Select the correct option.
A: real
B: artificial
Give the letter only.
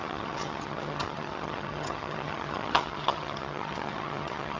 B